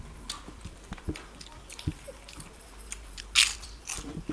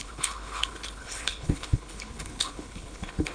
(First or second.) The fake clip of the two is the second